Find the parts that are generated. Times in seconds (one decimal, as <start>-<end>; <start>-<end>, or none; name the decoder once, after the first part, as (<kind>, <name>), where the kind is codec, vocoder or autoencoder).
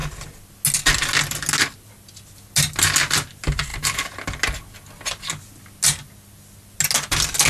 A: none